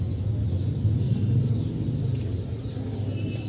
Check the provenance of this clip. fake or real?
real